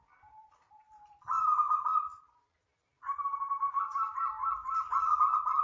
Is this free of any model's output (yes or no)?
no